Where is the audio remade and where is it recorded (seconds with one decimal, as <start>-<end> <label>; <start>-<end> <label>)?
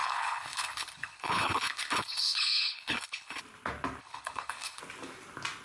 0.0-3.4 remade; 3.4-4.0 recorded; 4.0-4.8 remade; 4.8-5.6 recorded